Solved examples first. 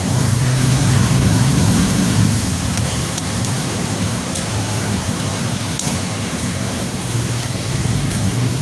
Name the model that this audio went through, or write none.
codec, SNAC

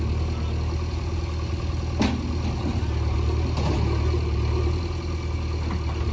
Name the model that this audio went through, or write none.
none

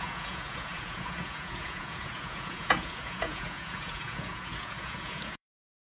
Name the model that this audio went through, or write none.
vocoder, Vocos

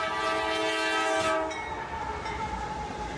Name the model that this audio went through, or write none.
none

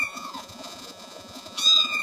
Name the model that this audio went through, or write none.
vocoder, Vocos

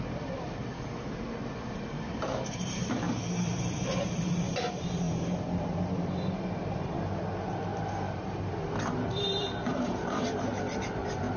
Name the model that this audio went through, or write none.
vocoder, BigVGAN v2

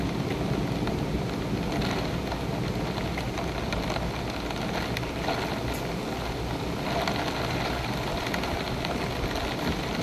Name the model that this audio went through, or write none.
none